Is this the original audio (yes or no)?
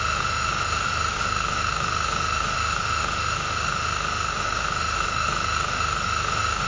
no